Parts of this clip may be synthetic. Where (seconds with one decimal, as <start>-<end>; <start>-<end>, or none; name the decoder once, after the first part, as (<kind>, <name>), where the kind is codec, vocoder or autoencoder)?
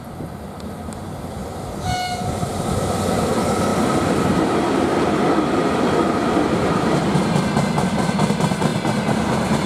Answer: none